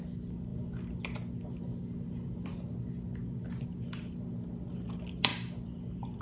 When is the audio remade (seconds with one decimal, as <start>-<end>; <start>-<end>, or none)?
none